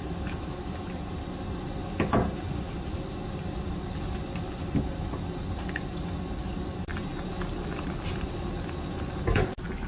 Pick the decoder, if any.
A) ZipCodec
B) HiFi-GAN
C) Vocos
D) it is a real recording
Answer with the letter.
D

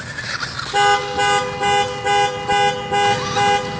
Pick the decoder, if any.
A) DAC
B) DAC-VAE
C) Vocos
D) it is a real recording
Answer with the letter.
D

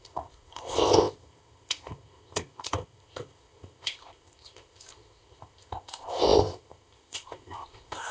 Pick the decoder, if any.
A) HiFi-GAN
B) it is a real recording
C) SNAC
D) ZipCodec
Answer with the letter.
D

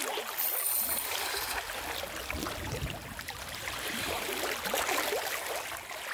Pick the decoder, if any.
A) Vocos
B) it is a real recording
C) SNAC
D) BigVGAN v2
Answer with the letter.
B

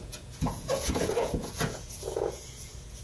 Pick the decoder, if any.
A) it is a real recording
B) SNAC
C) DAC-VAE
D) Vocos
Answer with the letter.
D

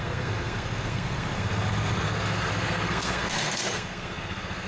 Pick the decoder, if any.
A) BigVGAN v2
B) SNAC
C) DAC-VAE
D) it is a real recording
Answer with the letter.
B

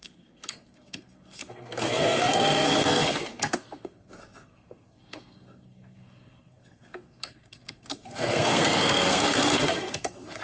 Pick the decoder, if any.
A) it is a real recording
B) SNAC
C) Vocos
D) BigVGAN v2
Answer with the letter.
B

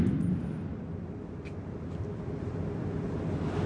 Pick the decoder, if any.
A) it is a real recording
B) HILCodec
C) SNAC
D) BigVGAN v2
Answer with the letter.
A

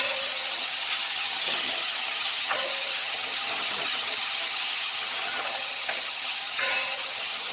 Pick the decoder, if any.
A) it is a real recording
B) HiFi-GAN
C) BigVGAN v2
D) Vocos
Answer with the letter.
B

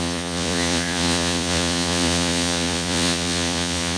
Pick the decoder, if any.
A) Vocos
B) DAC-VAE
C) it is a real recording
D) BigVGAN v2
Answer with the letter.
A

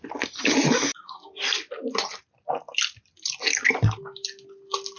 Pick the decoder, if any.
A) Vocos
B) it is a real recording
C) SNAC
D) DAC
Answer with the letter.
B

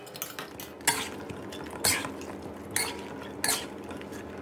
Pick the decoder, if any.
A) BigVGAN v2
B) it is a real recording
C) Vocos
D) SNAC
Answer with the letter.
B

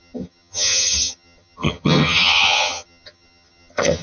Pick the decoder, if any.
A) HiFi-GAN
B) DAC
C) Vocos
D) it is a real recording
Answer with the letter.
A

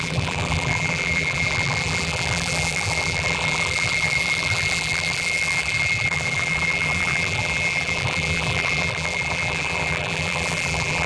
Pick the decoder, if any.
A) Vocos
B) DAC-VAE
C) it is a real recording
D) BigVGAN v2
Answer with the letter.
D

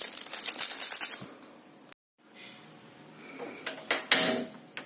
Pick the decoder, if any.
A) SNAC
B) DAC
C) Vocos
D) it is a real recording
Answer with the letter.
D